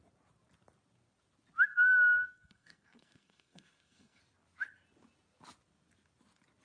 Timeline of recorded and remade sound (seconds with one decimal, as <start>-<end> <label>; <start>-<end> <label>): 0.0-1.7 recorded; 1.7-4.2 remade; 4.2-6.6 recorded